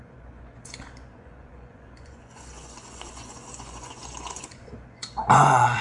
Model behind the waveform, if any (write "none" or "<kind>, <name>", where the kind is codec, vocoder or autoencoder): vocoder, Vocos